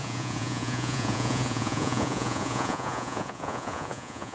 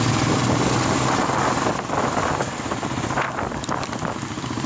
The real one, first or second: second